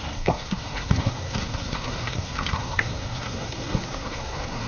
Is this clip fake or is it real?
fake